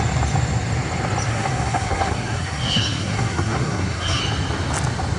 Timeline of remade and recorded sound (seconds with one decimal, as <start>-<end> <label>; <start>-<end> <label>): 0.0-1.3 recorded; 1.3-4.2 remade; 4.2-5.2 recorded